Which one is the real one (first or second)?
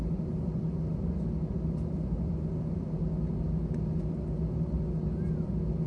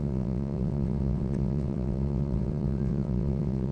first